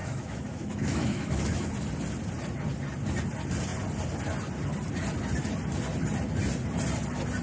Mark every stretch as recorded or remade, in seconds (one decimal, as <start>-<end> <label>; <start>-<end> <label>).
0.0-1.7 remade; 1.7-7.4 recorded